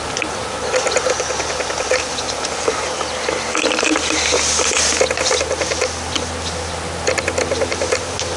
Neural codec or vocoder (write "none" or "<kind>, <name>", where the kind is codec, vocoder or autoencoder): none